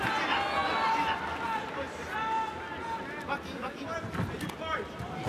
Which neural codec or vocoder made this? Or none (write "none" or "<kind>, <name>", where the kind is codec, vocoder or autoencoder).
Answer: none